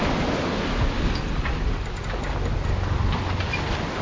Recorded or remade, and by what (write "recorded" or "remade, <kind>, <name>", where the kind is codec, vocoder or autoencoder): recorded